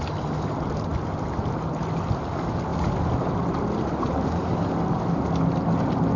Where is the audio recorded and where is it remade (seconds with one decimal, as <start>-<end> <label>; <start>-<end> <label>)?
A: 0.0-6.2 recorded